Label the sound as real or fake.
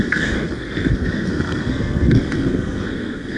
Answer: fake